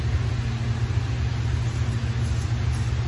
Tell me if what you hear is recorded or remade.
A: recorded